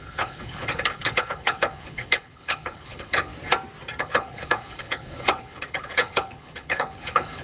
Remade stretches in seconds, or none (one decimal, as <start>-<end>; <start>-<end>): 0.0-3.3; 4.0-7.4